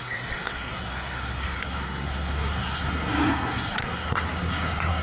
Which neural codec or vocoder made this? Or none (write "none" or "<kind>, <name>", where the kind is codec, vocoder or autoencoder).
codec, SNAC